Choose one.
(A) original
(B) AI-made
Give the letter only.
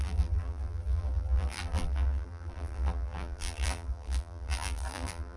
B